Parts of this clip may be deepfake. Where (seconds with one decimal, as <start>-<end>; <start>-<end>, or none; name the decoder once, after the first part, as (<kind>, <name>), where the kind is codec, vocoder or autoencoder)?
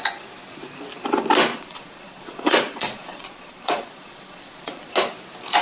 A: 1.5-4.9 (vocoder, Vocos)